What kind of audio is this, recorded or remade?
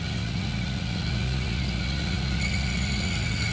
remade